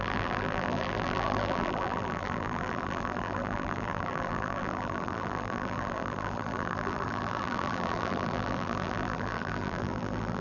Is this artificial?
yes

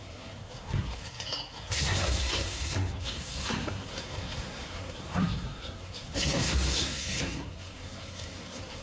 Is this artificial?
yes